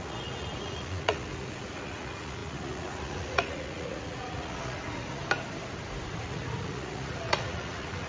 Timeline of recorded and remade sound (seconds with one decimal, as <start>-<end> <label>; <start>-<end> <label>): 0.0-5.2 remade; 5.2-6.2 recorded; 6.2-8.1 remade